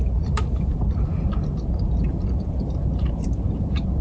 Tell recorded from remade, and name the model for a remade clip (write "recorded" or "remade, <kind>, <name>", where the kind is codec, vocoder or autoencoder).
remade, vocoder, BigVGAN v2